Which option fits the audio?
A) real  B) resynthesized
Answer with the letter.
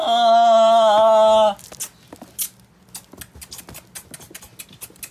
A